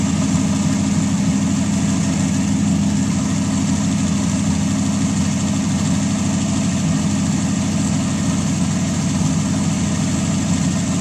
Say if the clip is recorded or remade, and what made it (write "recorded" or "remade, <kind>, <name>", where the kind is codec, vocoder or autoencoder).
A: recorded